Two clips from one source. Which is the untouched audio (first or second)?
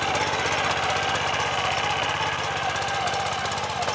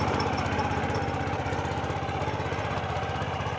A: first